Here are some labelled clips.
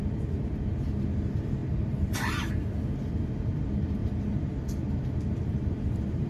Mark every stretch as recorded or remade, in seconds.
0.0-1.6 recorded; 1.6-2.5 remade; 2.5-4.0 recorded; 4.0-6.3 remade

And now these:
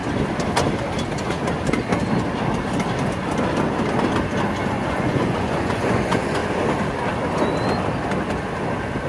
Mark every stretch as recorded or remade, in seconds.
0.0-4.7 recorded; 4.7-6.4 remade; 6.4-9.1 recorded

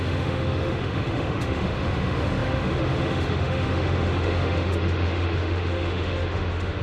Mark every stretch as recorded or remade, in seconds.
0.0-6.8 remade